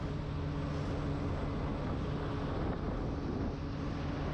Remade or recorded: recorded